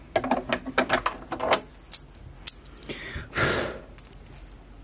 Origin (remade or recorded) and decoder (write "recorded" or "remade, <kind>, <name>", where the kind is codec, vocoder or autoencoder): recorded